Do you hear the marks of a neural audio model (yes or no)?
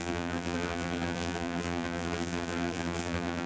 yes